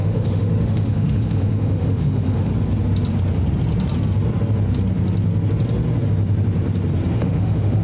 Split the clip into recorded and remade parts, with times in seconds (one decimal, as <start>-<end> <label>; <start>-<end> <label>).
0.0-2.5 remade; 2.5-7.2 recorded; 7.2-7.8 remade